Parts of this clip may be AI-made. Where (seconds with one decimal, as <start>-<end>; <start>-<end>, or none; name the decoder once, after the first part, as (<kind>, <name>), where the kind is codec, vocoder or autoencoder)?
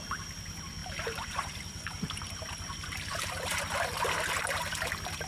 0.8-4.0 (vocoder, BigVGAN v2)